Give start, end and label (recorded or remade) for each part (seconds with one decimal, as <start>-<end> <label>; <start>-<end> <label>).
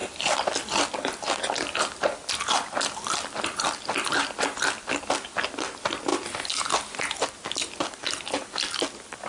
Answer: 0.0-4.9 remade; 4.9-7.6 recorded; 7.6-8.8 remade; 8.8-9.3 recorded